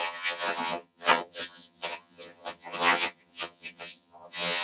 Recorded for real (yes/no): no